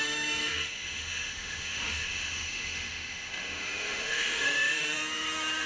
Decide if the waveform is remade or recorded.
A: remade